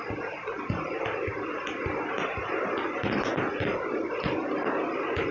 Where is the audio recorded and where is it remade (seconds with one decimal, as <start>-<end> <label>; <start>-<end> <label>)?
0.0-5.3 recorded